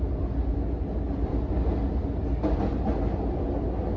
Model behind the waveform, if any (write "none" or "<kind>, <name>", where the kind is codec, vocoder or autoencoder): none